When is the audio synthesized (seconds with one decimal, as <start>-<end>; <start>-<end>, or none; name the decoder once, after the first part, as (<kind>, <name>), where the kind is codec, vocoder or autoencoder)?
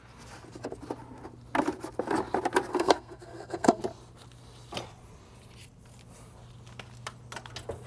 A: 2.7-3.8 (codec, SNAC)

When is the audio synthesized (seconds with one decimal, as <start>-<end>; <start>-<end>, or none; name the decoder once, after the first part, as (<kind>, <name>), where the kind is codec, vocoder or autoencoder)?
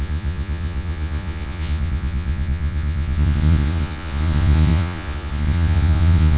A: 0.0-6.4 (vocoder, Vocos)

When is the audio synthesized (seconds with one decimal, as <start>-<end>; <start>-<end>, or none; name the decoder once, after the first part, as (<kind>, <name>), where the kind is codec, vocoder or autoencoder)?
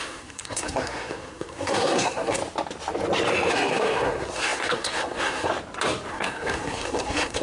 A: 0.0-2.4 (codec, SNAC); 3.5-5.5; 6.1-7.4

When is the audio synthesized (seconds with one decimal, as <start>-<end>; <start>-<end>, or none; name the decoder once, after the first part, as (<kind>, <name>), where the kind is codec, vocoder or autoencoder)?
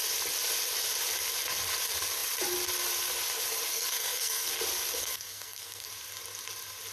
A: 3.7-4.5 (codec, SNAC); 5.0-5.9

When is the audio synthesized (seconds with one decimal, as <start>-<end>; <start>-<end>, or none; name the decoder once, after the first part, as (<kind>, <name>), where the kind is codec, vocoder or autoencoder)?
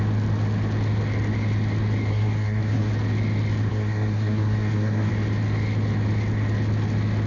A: 2.1-2.9 (codec, SNAC); 3.7-5.1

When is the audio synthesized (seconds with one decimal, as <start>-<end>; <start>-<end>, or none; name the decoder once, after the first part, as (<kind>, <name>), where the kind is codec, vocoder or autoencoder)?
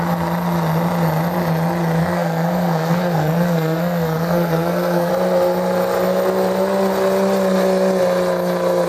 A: 2.0-5.1 (codec, SNAC)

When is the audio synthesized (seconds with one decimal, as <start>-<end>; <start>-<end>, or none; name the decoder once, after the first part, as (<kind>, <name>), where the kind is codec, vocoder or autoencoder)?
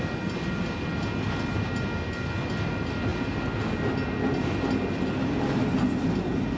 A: none